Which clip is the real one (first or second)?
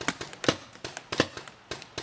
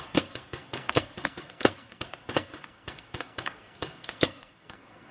first